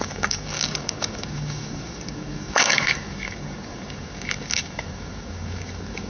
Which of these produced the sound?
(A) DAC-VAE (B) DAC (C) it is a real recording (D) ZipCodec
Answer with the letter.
B